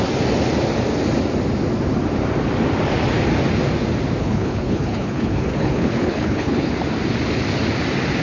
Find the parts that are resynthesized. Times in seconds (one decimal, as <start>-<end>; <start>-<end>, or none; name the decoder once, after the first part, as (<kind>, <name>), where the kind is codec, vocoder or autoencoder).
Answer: 4.2-6.7 (codec, HILCodec)